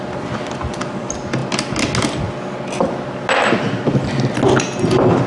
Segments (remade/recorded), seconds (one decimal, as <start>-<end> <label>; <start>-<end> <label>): 0.0-5.3 recorded

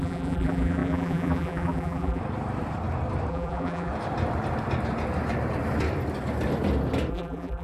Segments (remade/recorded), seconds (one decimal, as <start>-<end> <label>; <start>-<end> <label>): 0.0-2.2 remade; 2.2-3.3 recorded; 3.3-3.9 remade; 3.9-7.1 recorded; 7.1-7.6 remade

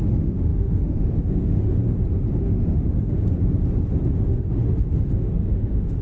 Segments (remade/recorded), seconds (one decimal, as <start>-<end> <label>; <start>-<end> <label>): 0.0-1.8 remade; 1.8-2.4 recorded; 2.4-3.2 remade; 3.2-4.1 recorded; 4.1-6.0 remade

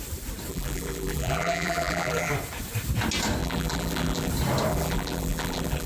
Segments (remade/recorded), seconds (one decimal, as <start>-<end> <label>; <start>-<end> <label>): 0.0-0.5 recorded; 0.5-2.3 remade; 2.3-3.4 recorded; 3.4-4.3 remade; 4.3-4.7 recorded; 4.7-5.9 remade

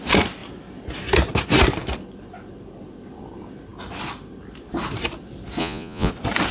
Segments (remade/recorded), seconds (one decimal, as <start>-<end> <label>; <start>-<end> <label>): 0.0-5.6 recorded; 5.6-6.1 remade; 6.1-6.5 recorded

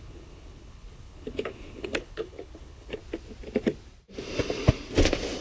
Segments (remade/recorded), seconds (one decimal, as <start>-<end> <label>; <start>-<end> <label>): 0.0-3.0 remade; 3.0-5.4 recorded